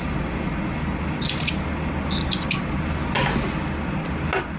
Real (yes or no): yes